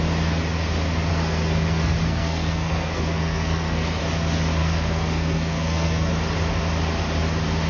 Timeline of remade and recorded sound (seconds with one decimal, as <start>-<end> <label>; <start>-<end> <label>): 0.0-1.1 recorded; 1.1-4.0 remade; 4.0-4.6 recorded; 4.6-6.1 remade; 6.1-7.7 recorded